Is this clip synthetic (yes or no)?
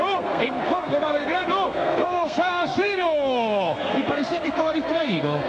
yes